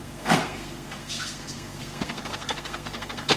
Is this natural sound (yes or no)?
no